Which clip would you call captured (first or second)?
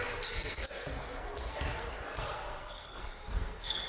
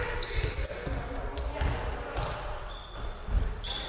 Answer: second